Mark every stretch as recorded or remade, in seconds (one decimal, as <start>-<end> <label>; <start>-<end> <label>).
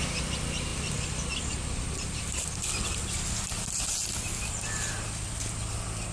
0.0-6.1 recorded